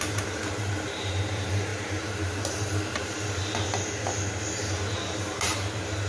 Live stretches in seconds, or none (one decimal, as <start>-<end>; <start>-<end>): 3.4-4.9